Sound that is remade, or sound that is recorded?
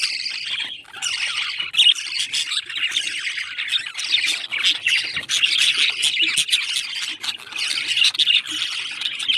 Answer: recorded